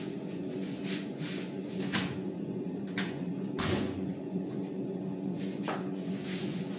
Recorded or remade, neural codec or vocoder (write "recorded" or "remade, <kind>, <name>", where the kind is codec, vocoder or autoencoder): remade, vocoder, Vocos